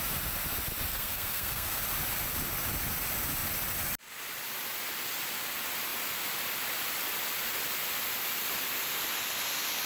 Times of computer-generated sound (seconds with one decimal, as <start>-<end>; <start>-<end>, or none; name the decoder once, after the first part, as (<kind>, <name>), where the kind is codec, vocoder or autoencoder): 0.9-1.8 (codec, SNAC)